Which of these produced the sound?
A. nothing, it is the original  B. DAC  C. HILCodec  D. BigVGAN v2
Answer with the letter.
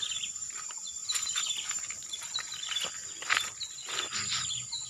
A